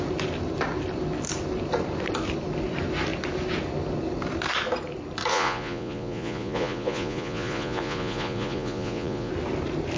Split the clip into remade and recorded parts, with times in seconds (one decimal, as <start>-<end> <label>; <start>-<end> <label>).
0.0-5.3 recorded; 5.3-9.3 remade; 9.3-10.0 recorded